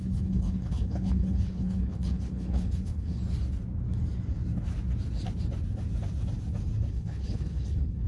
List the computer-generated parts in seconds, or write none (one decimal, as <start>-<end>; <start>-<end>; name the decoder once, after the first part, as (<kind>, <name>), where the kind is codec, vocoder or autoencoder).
0.0-3.2 (codec, HILCodec); 6.9-8.1